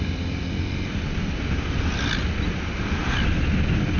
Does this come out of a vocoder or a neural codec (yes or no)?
no